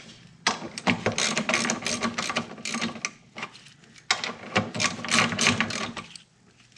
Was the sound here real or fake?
real